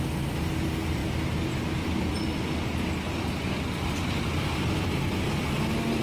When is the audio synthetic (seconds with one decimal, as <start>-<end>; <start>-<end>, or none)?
none